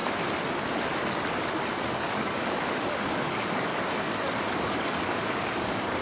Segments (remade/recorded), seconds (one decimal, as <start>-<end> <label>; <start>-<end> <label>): 0.0-1.9 recorded; 1.9-3.7 remade; 3.7-4.5 recorded; 4.5-6.0 remade